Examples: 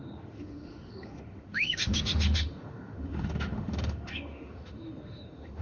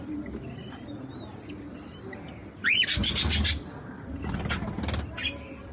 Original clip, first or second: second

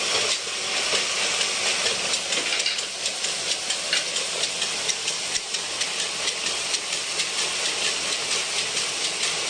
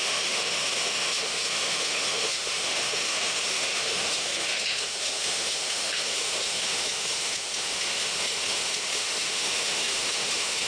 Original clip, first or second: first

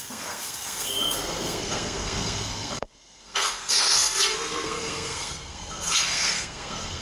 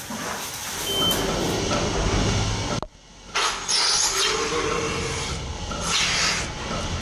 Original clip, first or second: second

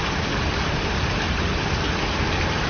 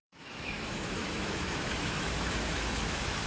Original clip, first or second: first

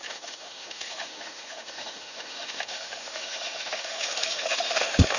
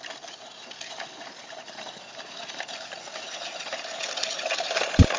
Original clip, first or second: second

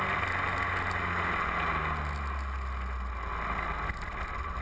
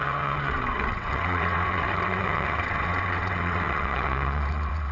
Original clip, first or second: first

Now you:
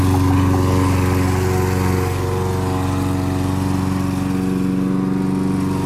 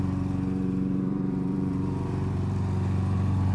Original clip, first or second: first